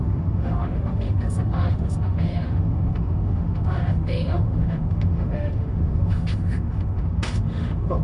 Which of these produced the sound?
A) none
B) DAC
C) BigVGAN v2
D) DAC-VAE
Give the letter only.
D